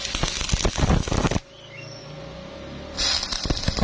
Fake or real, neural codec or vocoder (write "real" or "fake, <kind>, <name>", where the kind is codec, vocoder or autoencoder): real